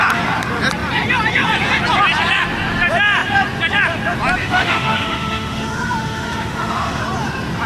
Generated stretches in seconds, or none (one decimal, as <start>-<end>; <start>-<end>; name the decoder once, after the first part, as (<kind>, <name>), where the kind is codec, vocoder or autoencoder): 4.4-7.0 (autoencoder, DAC-VAE)